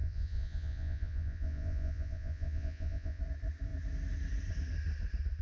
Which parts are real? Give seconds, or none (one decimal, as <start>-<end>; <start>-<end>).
3.2-5.4

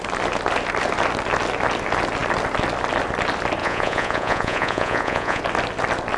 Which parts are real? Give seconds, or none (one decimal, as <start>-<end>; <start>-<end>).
0.0-3.6; 5.4-6.2